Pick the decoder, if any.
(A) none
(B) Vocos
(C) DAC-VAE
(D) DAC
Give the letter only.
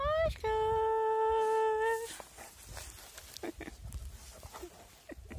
A